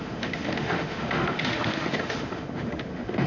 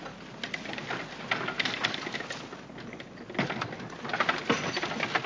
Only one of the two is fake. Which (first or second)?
first